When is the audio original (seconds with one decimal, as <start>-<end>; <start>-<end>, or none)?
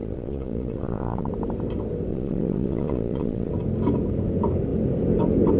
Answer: 1.3-2.1; 3.5-5.6